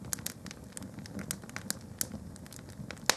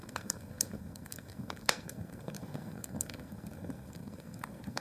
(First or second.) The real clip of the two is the first